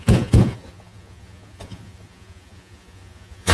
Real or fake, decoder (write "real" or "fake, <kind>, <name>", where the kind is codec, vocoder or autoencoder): fake, vocoder, Vocos